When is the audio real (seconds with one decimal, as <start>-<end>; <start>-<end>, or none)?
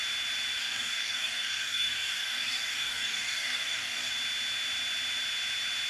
0.0-0.6; 4.1-5.9